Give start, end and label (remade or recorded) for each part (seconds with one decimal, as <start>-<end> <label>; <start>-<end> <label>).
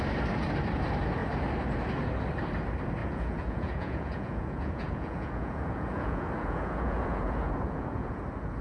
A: 0.0-3.0 recorded; 3.0-8.2 remade; 8.2-8.6 recorded